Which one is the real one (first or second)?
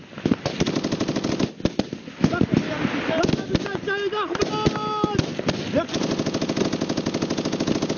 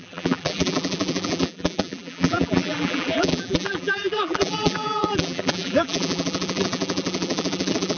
first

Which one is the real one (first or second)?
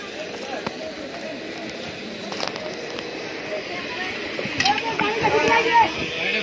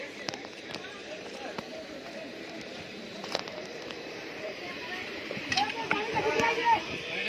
first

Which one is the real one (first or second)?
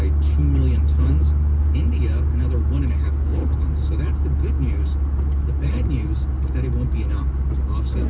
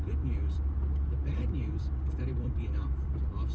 first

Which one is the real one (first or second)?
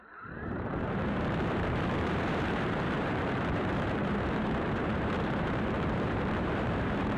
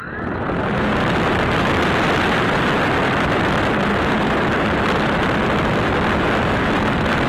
second